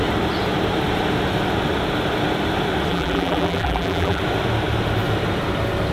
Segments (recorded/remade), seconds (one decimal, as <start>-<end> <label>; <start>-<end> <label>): 0.0-2.9 recorded; 2.9-4.2 remade; 4.2-5.9 recorded